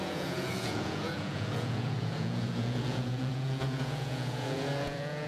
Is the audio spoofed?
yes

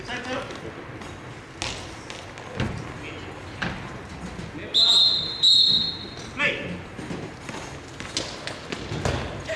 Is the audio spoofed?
no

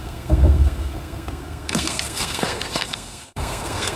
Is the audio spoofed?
yes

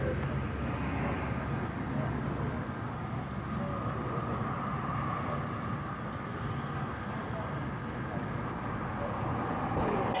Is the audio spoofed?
no